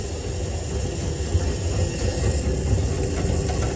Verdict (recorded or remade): recorded